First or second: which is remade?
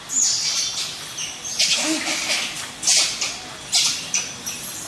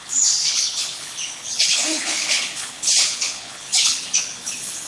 second